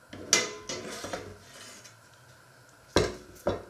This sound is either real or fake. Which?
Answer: real